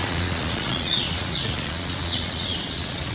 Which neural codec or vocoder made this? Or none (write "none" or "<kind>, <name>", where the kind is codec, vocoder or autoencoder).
vocoder, Vocos